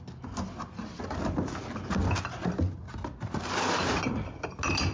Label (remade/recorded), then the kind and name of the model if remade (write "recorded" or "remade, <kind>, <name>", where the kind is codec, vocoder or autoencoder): recorded